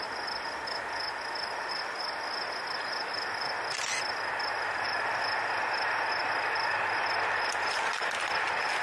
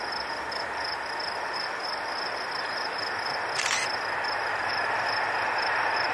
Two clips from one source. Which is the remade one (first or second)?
second